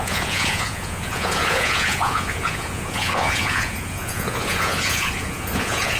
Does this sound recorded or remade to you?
remade